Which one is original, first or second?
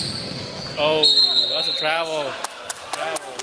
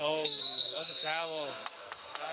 first